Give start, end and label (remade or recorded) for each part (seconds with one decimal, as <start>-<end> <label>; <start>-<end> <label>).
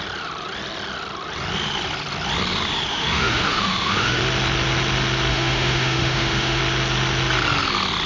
0.0-2.9 recorded; 2.9-4.2 remade; 4.2-5.3 recorded; 5.3-6.6 remade; 6.6-8.1 recorded